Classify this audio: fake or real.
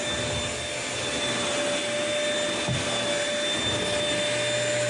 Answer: real